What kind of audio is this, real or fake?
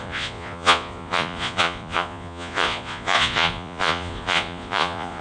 fake